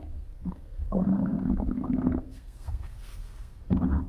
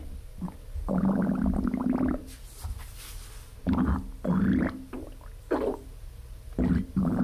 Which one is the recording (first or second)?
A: second